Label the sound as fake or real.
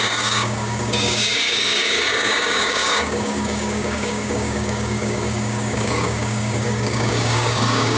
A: fake